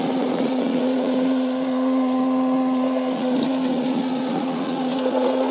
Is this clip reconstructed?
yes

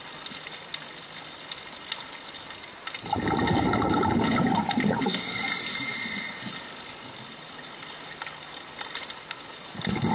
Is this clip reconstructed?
no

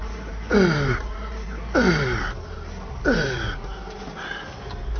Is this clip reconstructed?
no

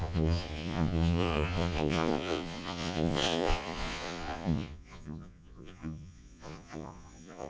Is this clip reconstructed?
yes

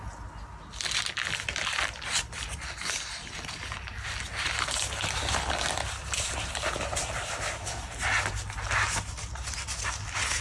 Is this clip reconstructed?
no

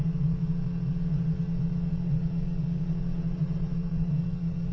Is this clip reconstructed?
yes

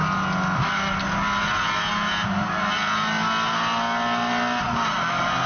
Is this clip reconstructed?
no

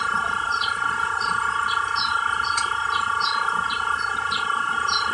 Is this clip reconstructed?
no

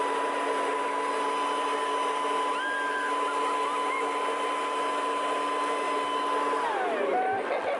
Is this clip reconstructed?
no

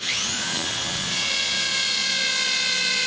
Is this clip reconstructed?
yes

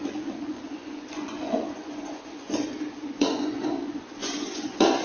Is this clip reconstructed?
yes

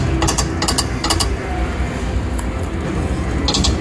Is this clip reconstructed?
no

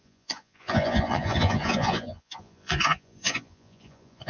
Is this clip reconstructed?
yes